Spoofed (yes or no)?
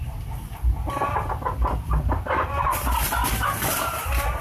no